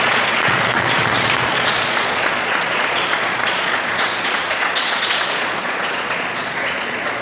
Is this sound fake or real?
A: fake